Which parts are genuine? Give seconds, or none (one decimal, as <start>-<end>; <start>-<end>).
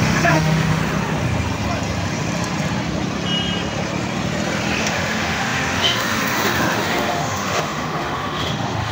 0.8-4.8